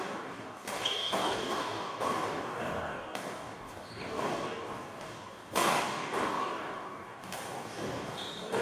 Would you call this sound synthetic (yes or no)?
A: yes